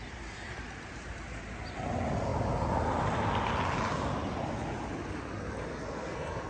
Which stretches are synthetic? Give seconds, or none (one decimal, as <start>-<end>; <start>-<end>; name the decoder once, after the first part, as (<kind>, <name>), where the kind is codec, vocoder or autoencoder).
5.7-6.5 (codec, SNAC)